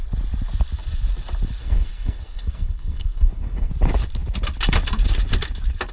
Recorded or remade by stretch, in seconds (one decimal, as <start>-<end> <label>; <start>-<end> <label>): 0.0-1.6 recorded; 1.6-3.7 remade; 3.7-5.9 recorded